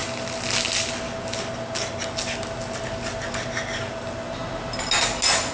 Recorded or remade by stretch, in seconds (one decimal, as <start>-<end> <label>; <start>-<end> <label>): 0.0-5.5 recorded